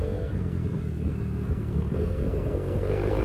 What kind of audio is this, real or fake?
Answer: fake